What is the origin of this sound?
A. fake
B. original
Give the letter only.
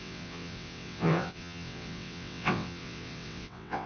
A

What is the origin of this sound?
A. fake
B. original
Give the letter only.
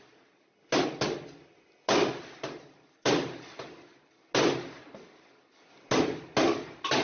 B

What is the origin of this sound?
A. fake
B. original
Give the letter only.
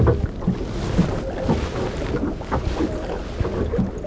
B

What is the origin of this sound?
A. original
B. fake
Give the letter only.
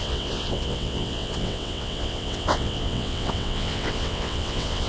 B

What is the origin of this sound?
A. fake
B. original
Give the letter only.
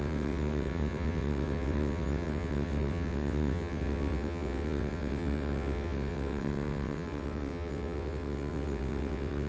A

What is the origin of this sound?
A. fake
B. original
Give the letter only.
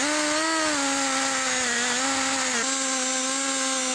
B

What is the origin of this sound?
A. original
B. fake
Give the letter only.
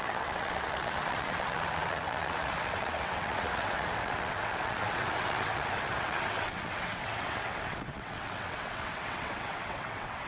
B